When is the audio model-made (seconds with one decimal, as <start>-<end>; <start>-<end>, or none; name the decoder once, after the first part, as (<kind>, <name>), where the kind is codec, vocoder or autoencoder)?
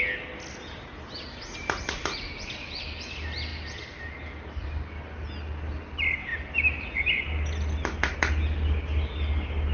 none